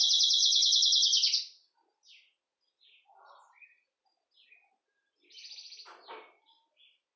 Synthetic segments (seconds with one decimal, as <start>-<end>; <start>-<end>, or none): none